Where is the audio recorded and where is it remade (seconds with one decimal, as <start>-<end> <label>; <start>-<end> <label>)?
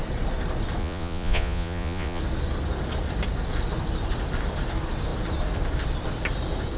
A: 0.0-0.8 recorded; 0.8-2.2 remade; 2.2-6.8 recorded